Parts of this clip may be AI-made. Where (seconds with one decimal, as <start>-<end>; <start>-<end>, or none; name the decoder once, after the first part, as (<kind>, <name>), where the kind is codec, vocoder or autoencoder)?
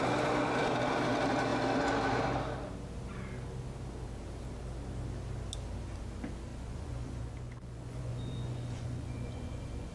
6.5-9.9 (vocoder, Vocos)